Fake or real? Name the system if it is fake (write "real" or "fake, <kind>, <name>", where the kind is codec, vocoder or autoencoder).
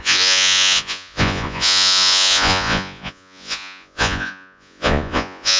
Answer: fake, vocoder, Vocos